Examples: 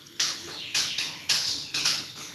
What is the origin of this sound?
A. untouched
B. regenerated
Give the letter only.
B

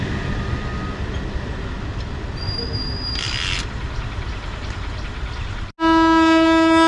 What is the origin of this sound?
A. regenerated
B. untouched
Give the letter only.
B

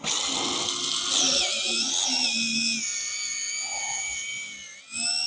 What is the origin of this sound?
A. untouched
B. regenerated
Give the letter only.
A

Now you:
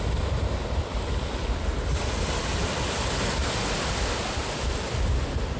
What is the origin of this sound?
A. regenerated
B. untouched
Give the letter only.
B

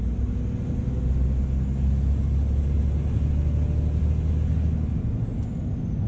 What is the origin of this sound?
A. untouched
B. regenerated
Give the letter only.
A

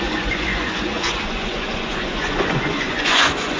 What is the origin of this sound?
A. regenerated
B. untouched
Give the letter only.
A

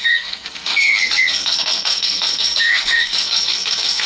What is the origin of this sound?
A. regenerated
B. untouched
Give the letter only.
A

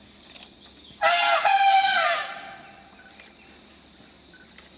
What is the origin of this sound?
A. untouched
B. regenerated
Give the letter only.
A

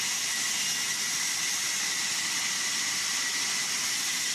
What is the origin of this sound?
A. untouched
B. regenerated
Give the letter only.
A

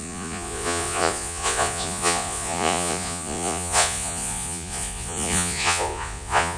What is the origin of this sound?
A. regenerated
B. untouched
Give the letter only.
A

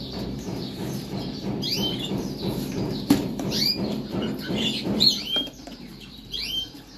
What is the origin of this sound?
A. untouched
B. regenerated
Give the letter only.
B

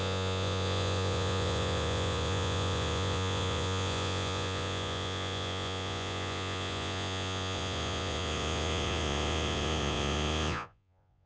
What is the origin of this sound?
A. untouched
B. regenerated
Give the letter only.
B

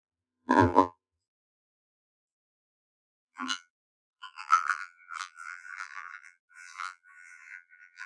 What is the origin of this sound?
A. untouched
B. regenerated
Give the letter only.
B